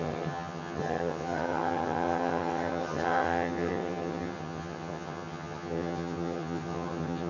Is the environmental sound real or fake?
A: fake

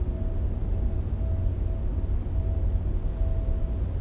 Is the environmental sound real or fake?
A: real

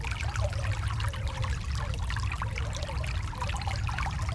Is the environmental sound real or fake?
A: real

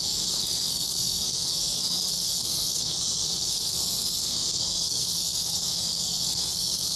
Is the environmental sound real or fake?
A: fake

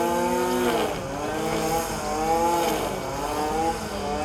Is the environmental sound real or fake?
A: real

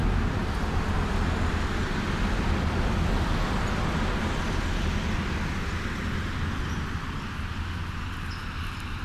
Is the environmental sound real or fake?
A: real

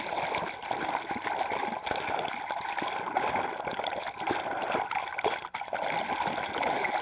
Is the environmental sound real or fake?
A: real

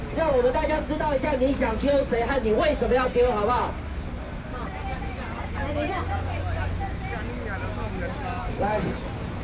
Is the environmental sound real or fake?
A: real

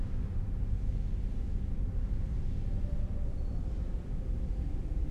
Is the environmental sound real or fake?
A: real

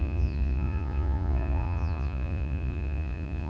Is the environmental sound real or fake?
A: fake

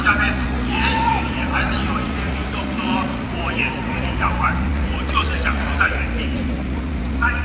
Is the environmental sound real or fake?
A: fake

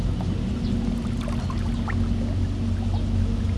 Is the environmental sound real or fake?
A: real